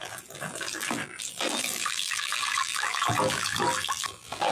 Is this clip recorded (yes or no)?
no